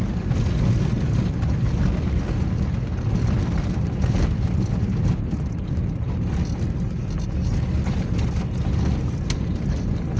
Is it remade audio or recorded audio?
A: recorded